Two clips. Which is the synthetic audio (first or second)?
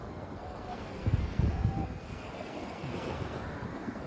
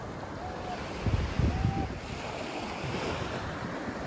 first